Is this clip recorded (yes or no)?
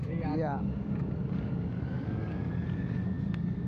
no